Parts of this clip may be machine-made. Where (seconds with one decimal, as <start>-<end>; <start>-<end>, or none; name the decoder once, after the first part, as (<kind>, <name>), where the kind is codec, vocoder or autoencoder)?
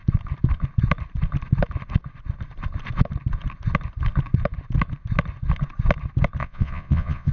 6.4-7.3 (vocoder, Vocos)